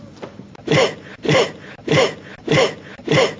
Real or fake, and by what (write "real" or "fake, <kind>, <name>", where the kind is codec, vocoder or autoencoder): real